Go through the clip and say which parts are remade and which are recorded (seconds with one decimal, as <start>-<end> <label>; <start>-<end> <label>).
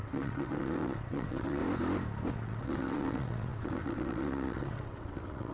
0.0-1.6 remade; 1.6-2.3 recorded; 2.3-5.5 remade